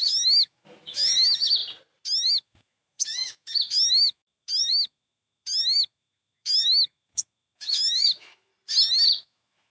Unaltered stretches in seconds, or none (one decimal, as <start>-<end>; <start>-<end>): 1.6-2.3; 8.5-9.2

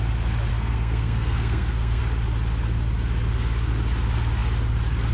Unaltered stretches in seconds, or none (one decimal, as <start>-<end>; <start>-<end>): 0.0-0.5; 2.0-5.1

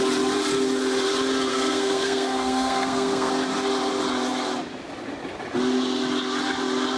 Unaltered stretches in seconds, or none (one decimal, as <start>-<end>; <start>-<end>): 0.0-1.5; 3.3-7.0

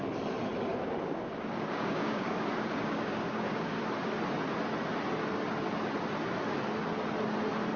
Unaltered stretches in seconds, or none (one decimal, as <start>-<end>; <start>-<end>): 0.0-0.7; 3.8-7.8

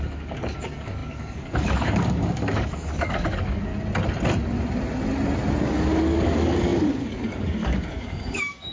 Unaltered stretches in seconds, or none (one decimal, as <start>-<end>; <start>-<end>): 3.7-5.6

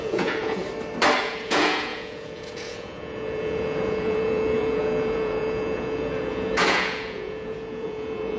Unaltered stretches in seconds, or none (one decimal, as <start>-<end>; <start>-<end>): 0.6-1.2

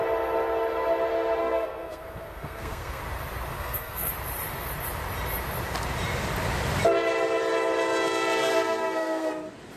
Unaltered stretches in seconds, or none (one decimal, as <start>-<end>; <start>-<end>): 0.0-1.4; 3.0-3.5; 4.1-8.4; 9.3-9.8